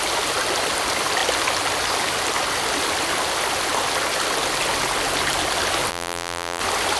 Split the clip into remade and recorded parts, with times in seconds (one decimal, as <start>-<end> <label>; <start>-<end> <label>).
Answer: 0.0-5.9 recorded; 5.9-6.6 remade; 6.6-7.0 recorded